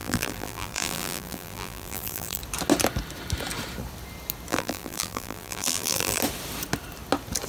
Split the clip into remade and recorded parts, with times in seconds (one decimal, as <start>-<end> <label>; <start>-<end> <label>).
0.0-2.4 remade; 2.4-4.5 recorded; 4.5-6.2 remade; 6.2-7.5 recorded